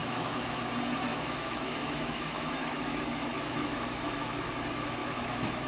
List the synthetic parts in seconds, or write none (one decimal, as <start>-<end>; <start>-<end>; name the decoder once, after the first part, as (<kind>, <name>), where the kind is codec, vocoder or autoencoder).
0.0-0.6 (autoencoder, DAC-VAE); 1.1-4.5; 5.0-5.7